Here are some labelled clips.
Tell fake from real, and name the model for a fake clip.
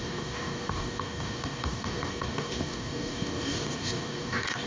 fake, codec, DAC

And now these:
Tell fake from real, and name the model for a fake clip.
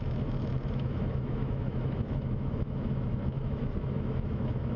fake, autoencoder, DAC-VAE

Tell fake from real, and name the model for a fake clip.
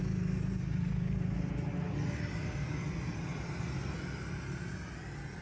real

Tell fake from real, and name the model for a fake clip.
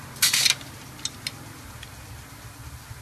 real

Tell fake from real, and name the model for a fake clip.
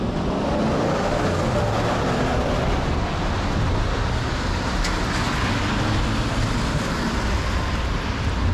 real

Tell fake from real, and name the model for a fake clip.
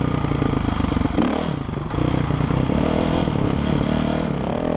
real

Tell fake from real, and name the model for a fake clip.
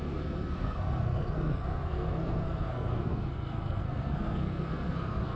fake, codec, SNAC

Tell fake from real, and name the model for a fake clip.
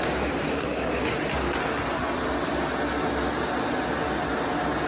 real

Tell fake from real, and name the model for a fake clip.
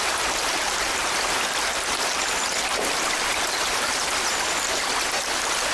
real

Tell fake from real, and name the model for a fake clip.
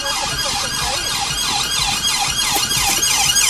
fake, vocoder, BigVGAN v2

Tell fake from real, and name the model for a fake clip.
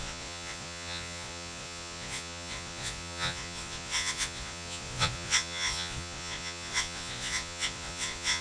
fake, vocoder, Vocos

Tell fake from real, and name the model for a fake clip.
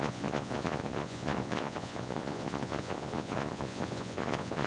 fake, vocoder, Vocos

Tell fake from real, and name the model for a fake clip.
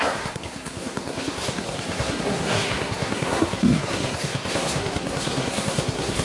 fake, codec, SNAC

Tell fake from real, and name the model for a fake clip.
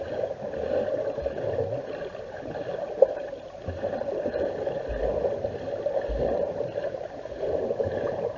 real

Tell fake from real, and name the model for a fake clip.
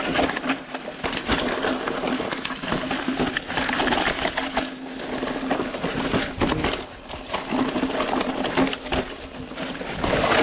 real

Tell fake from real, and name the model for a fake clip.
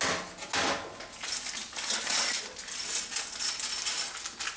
real